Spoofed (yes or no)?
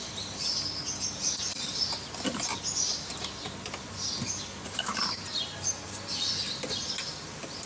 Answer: yes